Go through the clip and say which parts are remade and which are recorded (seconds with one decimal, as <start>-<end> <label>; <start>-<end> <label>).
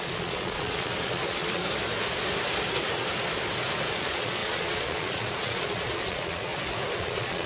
0.0-1.6 remade; 1.6-3.9 recorded; 3.9-6.5 remade; 6.5-7.0 recorded; 7.0-7.5 remade